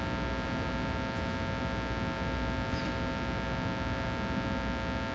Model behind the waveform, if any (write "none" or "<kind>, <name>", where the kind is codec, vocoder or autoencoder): none